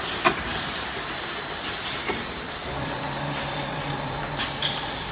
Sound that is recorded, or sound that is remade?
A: remade